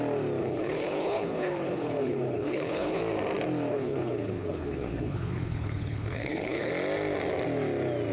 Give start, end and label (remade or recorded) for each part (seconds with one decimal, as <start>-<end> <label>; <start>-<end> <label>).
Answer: 0.0-0.4 recorded; 0.4-3.0 remade; 3.0-3.7 recorded; 3.7-6.7 remade; 6.7-8.1 recorded